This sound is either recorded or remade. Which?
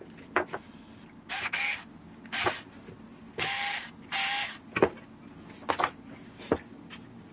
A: recorded